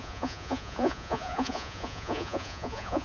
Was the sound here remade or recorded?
remade